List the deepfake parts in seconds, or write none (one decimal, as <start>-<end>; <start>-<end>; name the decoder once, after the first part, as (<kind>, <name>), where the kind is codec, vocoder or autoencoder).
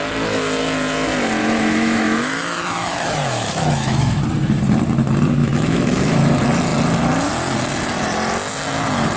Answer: 1.4-4.2 (autoencoder, DAC-VAE); 5.4-6.2